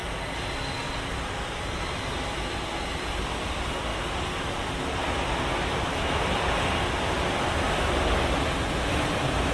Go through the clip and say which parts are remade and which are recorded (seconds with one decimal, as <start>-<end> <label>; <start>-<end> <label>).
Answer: 0.0-9.5 recorded